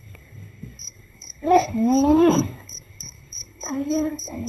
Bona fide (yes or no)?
no